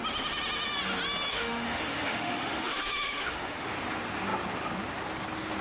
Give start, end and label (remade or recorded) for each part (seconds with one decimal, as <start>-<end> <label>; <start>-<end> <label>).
0.0-1.3 recorded; 1.3-3.7 remade; 3.7-5.6 recorded